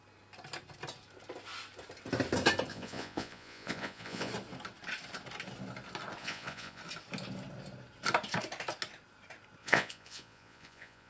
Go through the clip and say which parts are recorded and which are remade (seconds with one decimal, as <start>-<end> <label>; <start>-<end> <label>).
0.0-2.7 recorded; 2.7-4.3 remade; 4.3-6.2 recorded; 6.2-6.8 remade; 6.8-9.6 recorded; 9.6-11.1 remade